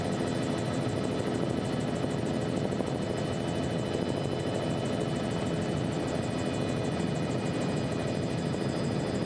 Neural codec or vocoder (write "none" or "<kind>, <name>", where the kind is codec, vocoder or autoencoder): none